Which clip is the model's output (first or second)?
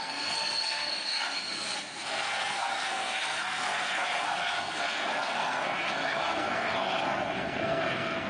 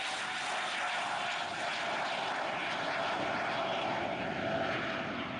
first